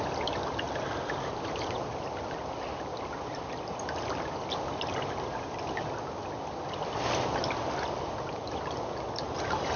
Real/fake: real